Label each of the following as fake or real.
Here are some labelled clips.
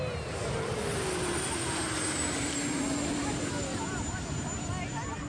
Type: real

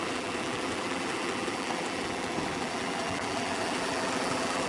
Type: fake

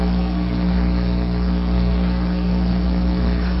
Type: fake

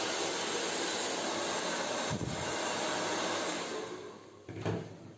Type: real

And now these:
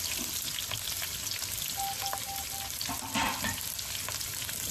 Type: real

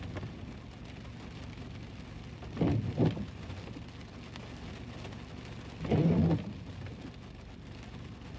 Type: real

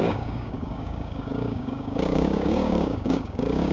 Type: fake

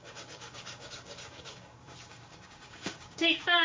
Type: fake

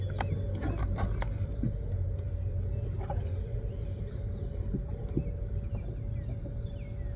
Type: real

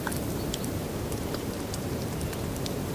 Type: fake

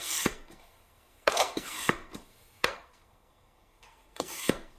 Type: fake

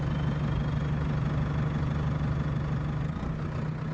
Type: real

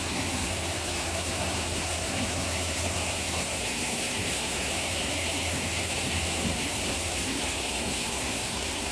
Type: fake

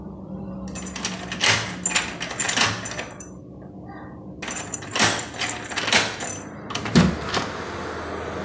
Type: real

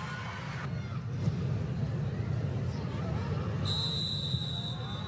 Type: real